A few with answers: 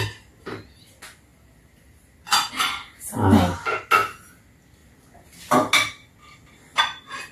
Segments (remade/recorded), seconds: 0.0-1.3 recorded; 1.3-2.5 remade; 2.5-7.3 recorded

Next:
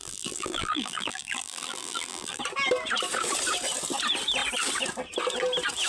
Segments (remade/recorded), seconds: 0.0-2.4 remade; 2.4-5.9 recorded

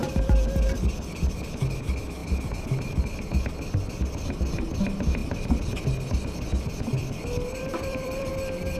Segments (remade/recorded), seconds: 0.0-1.6 remade; 1.6-7.0 recorded; 7.0-8.3 remade; 8.3-8.8 recorded